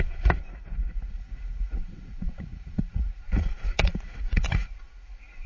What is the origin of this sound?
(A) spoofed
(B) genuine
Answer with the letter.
A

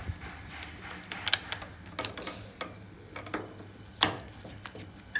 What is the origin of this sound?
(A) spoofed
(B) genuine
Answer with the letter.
B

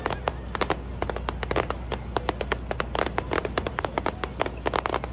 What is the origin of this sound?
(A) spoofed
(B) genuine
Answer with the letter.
B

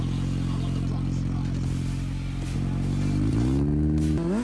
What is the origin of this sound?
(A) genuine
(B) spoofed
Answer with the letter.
A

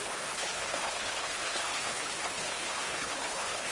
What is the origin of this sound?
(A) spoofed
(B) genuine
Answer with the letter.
A